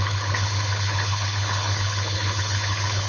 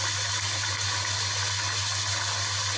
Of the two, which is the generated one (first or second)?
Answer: first